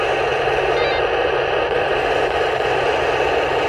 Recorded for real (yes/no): yes